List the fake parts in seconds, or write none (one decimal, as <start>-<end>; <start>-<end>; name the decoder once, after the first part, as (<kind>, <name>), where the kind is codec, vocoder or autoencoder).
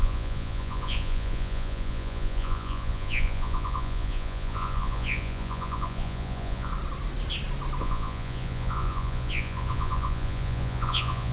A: 0.0-6.7 (vocoder, Vocos); 7.8-11.3